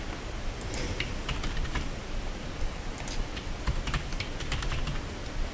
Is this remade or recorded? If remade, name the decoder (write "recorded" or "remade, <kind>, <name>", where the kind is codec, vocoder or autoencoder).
recorded